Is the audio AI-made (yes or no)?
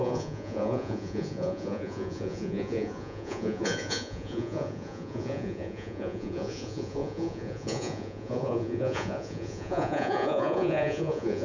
yes